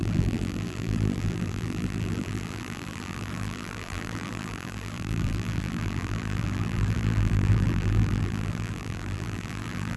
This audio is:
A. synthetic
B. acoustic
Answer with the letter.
A